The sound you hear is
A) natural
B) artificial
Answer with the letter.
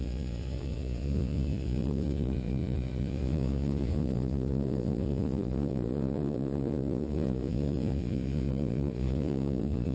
B